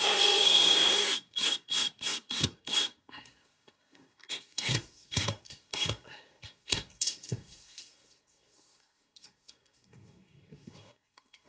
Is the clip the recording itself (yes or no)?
no